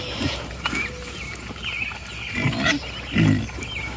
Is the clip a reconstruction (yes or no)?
no